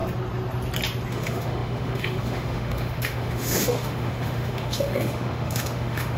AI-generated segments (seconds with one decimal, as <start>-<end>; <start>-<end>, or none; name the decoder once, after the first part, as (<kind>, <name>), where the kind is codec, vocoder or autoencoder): 1.1-6.2 (autoencoder, DAC-VAE)